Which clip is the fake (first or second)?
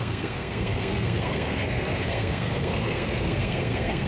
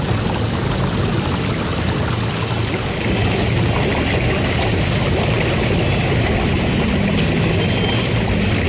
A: first